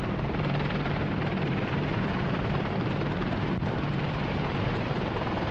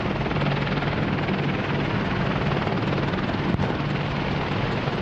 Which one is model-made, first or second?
first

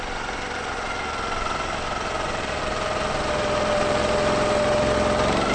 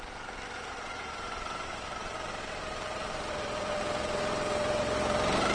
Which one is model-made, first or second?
second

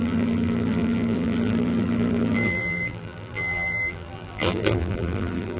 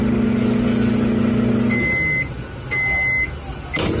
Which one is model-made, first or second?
first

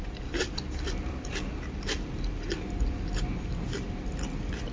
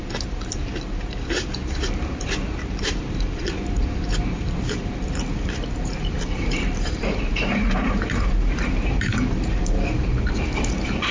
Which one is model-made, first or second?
second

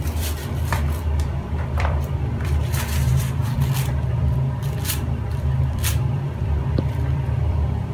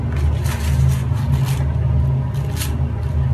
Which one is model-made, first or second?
first